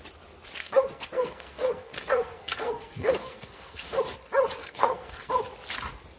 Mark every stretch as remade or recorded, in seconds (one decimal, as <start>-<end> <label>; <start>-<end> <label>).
0.0-0.6 recorded; 0.6-4.0 remade; 4.0-4.6 recorded; 4.6-5.3 remade; 5.3-6.2 recorded

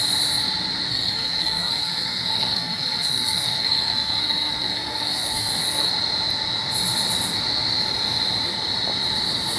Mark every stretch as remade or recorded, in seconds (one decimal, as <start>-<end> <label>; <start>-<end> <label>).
0.0-0.9 recorded; 0.9-5.9 remade; 5.9-9.6 recorded

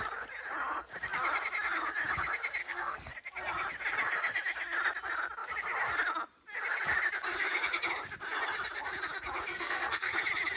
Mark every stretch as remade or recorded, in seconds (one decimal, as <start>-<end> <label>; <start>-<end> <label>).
0.0-2.6 recorded; 2.6-3.1 remade; 3.1-9.5 recorded; 9.5-10.2 remade; 10.2-10.6 recorded